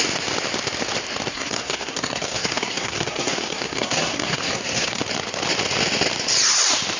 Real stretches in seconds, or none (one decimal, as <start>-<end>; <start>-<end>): 0.0-1.3; 5.0-7.0